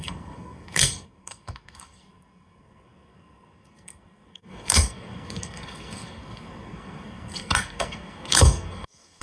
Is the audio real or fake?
fake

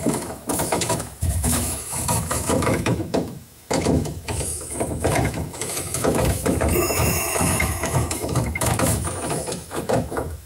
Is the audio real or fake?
fake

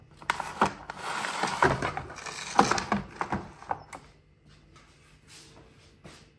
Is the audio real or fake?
real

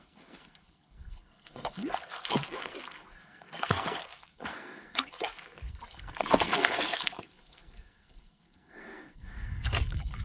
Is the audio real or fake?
fake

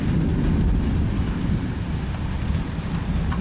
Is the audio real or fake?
real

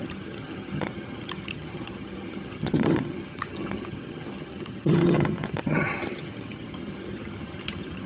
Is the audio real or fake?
fake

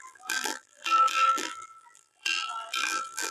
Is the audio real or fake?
fake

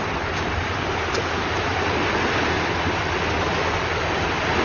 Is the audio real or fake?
real